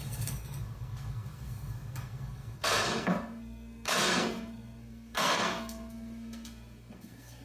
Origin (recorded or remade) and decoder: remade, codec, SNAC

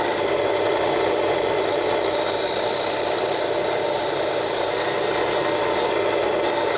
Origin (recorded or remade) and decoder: recorded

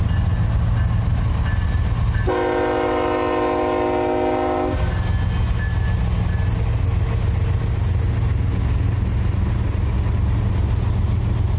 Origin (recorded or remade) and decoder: recorded